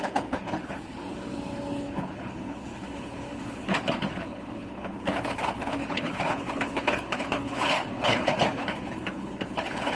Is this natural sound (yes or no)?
no